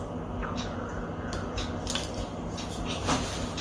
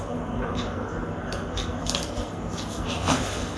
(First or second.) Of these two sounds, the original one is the first